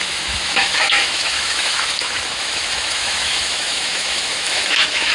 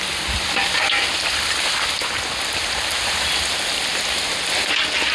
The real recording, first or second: second